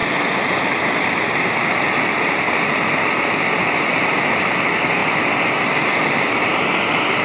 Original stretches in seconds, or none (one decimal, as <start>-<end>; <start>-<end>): 0.0-7.2